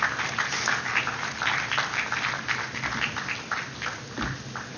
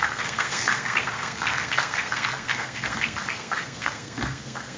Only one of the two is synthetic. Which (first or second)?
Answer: second